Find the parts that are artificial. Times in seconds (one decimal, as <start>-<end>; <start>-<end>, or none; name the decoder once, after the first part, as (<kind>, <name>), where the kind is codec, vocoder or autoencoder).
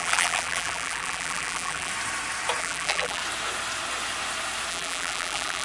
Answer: 0.0-1.9 (vocoder, BigVGAN v2); 2.6-3.2; 4.7-5.6